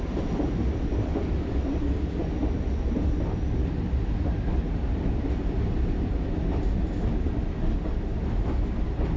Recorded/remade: remade